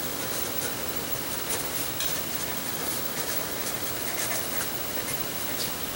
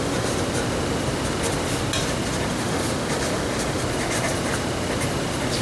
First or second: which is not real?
first